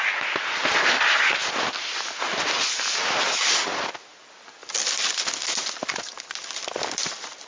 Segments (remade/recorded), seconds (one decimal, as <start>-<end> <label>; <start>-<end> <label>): 0.0-7.5 recorded